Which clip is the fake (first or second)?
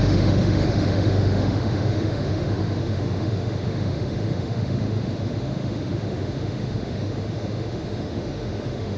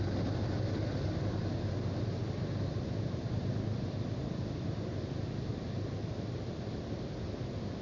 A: first